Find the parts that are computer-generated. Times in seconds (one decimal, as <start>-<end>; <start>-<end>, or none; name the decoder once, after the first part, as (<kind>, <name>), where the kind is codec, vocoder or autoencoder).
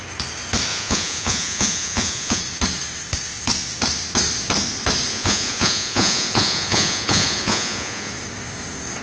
0.7-2.4 (vocoder, Vocos); 5.1-8.1